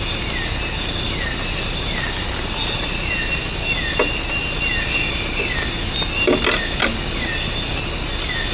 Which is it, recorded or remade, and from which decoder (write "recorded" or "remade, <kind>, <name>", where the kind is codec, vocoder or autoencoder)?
recorded